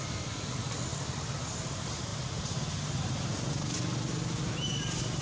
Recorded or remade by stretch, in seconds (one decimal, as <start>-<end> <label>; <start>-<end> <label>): 0.0-5.2 recorded